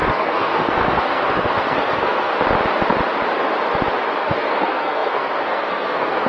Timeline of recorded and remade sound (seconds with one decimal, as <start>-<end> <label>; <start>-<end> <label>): 0.0-2.3 remade; 2.3-4.2 recorded; 4.2-6.3 remade